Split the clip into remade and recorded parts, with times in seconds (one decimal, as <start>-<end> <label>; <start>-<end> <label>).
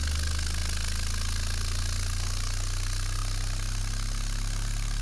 0.0-5.0 recorded